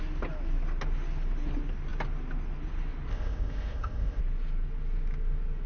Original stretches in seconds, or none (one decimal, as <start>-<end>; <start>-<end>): 0.0-3.1; 4.2-5.7